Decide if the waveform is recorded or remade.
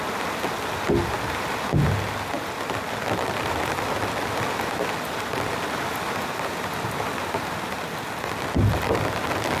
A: recorded